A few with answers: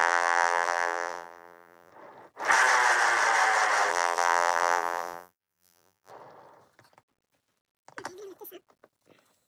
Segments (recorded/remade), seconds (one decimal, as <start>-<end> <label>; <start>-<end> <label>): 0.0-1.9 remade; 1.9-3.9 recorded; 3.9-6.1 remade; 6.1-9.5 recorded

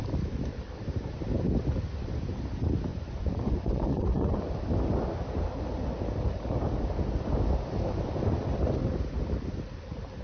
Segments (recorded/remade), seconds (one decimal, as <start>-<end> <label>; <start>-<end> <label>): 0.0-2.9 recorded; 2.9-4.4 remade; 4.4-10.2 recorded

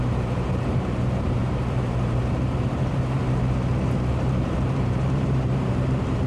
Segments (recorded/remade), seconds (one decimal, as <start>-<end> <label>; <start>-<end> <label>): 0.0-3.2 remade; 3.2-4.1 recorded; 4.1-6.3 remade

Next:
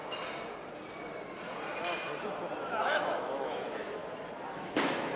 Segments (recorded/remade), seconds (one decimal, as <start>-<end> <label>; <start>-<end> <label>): 0.0-2.8 recorded; 2.8-4.0 remade; 4.0-4.5 recorded; 4.5-5.2 remade

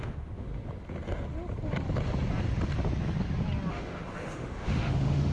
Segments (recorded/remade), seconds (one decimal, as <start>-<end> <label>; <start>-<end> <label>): 0.0-0.5 remade; 0.5-3.7 recorded; 3.7-5.3 remade